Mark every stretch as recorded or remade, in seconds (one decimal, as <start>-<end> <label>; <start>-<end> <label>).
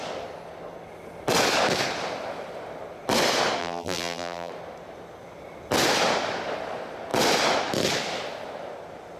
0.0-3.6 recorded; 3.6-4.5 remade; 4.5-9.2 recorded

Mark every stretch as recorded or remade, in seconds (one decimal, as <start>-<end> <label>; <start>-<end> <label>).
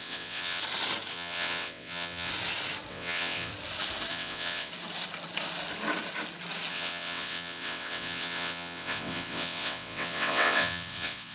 0.0-0.6 remade; 0.6-1.1 recorded; 1.1-2.3 remade; 2.3-2.9 recorded; 2.9-3.5 remade; 3.5-4.1 recorded; 4.1-4.7 remade; 4.7-6.7 recorded; 6.7-11.3 remade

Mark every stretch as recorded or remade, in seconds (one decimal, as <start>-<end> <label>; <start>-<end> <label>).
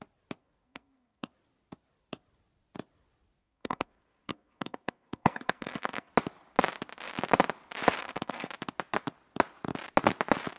0.0-0.4 recorded; 0.4-1.3 remade; 1.3-3.4 recorded; 3.4-6.1 remade; 6.1-8.0 recorded; 8.0-8.5 remade; 8.5-10.6 recorded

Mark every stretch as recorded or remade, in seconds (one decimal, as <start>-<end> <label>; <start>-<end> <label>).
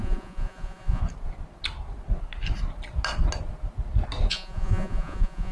0.0-1.0 remade; 1.0-4.3 recorded; 4.3-5.5 remade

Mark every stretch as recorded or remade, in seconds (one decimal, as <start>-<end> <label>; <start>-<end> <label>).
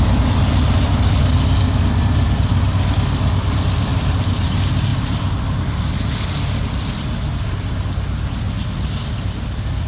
0.0-3.9 recorded; 3.9-4.4 remade; 4.4-4.9 recorded; 4.9-7.7 remade; 7.7-9.9 recorded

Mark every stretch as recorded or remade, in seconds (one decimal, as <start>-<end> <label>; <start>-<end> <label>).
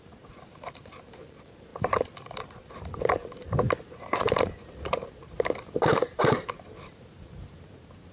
0.0-8.1 remade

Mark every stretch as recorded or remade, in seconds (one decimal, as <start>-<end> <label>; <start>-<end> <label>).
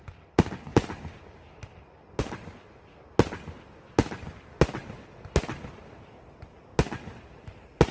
0.0-7.9 recorded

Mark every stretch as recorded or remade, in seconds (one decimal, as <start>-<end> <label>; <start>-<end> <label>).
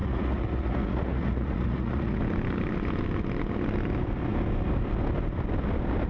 0.0-2.2 remade; 2.2-6.1 recorded